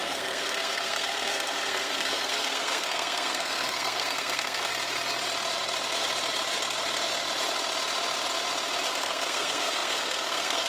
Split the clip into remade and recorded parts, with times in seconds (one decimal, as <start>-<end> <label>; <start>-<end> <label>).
0.0-4.7 remade; 4.7-8.9 recorded; 8.9-10.7 remade